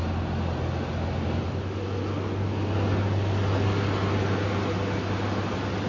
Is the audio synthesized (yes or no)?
no